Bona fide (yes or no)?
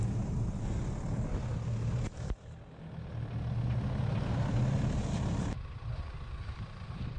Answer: yes